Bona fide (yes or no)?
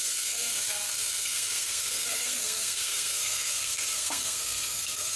no